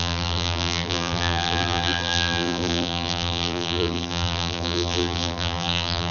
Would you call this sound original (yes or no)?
no